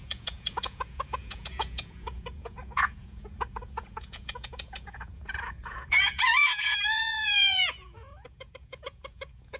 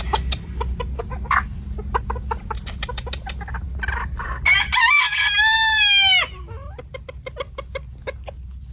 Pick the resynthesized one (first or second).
first